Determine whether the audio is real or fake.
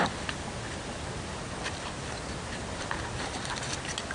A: real